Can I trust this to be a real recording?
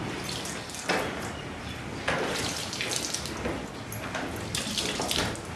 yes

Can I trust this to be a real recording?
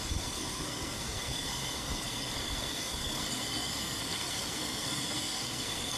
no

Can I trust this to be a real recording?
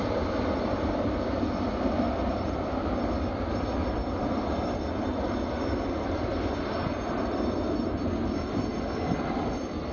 yes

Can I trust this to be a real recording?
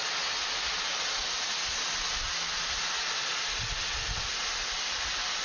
yes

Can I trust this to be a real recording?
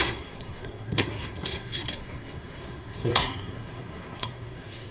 no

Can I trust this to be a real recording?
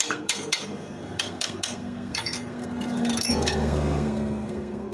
no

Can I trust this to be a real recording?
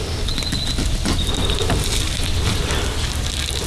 yes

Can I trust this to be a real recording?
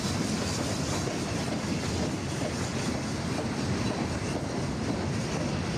yes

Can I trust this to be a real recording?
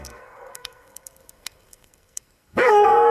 no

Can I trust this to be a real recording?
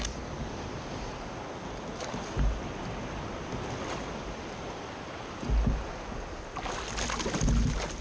yes